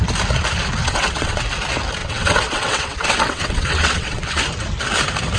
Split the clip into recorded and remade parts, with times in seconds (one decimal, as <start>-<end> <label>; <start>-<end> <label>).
0.0-0.8 recorded; 0.8-1.4 remade; 1.4-2.0 recorded; 2.0-4.4 remade; 4.4-5.4 recorded